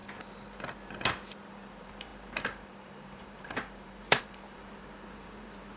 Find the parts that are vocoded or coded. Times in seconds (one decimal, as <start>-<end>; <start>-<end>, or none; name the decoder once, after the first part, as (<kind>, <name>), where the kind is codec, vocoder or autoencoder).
1.5-5.8 (vocoder, BigVGAN v2)